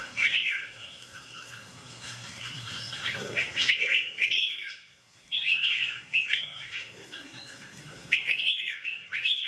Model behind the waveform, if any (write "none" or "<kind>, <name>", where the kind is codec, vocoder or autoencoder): codec, SNAC